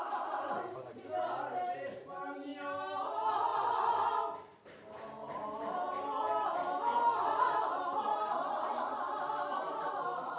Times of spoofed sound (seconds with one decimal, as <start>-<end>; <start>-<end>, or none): 0.0-3.5; 7.8-10.4